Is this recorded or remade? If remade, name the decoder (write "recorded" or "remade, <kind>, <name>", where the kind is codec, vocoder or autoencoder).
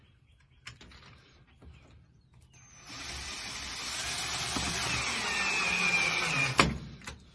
recorded